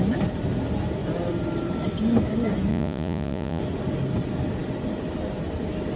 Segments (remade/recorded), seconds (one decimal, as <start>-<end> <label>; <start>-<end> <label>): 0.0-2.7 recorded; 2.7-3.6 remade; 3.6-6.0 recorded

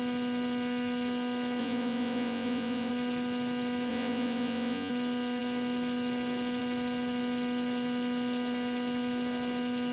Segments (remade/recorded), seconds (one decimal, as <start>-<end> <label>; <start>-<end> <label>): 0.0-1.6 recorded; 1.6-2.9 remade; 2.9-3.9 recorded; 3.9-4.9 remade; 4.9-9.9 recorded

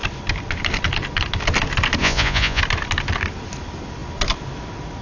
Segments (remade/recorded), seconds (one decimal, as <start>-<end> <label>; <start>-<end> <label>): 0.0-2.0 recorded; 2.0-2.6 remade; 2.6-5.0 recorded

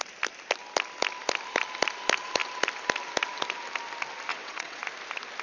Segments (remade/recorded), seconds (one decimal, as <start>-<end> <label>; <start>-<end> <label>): 0.0-4.3 recorded; 4.3-4.8 remade; 4.8-5.4 recorded

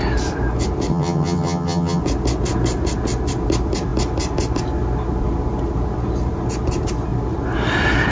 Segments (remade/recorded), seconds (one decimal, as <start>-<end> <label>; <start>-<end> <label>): 0.0-0.9 recorded; 0.9-2.0 remade; 2.0-8.1 recorded